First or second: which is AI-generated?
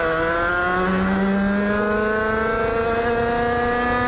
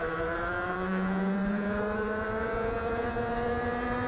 second